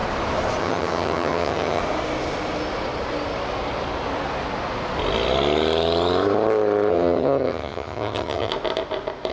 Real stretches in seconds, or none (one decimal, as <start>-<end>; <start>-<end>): 0.0-0.6; 1.8-6.9; 8.5-9.3